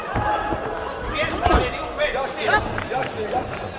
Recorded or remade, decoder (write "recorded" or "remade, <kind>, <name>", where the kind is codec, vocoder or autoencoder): recorded